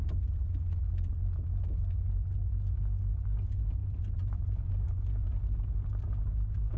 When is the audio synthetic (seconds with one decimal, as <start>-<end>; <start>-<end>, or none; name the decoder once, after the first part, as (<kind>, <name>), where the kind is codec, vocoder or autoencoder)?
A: 3.8-4.7 (vocoder, BigVGAN v2)

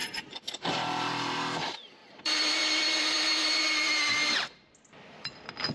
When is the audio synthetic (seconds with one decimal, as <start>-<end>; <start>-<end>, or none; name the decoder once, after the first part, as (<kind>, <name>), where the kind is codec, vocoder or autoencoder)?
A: 0.0-1.3 (vocoder, BigVGAN v2); 2.0-5.7

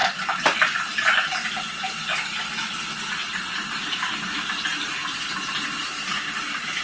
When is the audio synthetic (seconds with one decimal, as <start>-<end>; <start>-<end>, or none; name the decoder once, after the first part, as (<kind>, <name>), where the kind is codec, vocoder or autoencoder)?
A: none

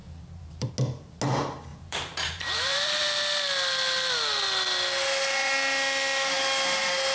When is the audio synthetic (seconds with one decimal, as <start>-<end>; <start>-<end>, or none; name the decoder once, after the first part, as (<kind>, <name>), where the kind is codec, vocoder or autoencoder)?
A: 0.0-0.7 (vocoder, BigVGAN v2); 1.7-3.0

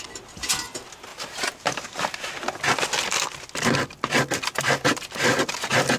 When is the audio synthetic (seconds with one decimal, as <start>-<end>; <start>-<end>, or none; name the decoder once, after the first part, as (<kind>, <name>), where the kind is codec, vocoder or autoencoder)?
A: 1.1-2.2 (vocoder, BigVGAN v2)

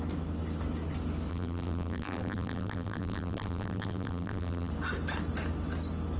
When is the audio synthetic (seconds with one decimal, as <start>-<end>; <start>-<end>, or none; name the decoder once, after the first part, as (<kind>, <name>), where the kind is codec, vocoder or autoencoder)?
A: 1.3-4.7 (vocoder, BigVGAN v2)

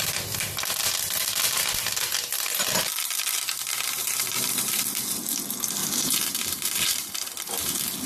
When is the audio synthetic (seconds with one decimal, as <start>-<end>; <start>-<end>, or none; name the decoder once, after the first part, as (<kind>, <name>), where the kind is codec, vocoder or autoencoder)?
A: 4.0-4.8 (vocoder, BigVGAN v2); 5.8-7.1